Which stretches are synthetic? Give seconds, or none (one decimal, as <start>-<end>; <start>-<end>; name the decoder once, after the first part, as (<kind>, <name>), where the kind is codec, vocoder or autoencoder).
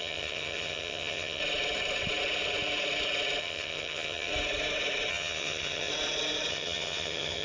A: 0.0-1.4 (vocoder, HiFi-GAN); 3.4-4.3; 5.1-5.9; 6.5-7.4